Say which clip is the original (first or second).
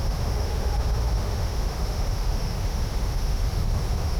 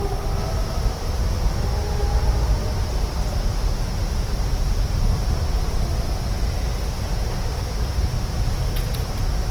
second